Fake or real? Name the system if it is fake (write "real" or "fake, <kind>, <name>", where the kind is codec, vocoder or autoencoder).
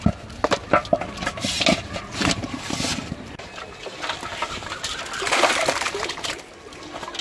real